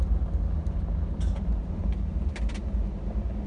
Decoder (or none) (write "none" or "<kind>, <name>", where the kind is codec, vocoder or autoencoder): none